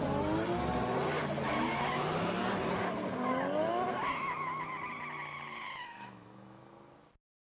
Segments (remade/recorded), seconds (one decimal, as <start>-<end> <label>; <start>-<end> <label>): 0.0-5.8 recorded; 5.8-6.7 remade; 6.7-7.5 recorded